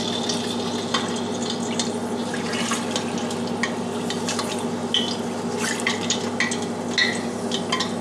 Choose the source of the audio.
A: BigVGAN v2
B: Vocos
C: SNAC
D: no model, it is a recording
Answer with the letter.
D